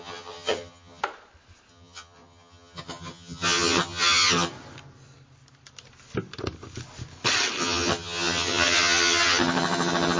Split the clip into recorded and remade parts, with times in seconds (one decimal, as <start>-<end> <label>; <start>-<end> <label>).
0.0-1.0 remade; 1.0-1.7 recorded; 1.7-4.5 remade; 4.5-7.6 recorded; 7.6-10.2 remade